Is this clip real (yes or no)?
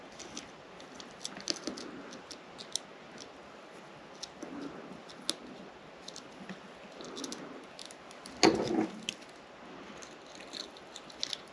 yes